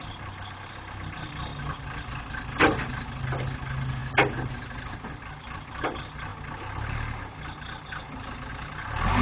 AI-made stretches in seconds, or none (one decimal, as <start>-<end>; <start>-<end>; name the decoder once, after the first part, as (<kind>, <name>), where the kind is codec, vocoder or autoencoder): none